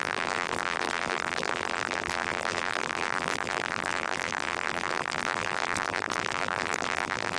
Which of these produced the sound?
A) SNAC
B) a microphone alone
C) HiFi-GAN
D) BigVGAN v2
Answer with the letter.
D